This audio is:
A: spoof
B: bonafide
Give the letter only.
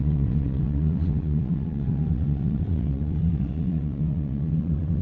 A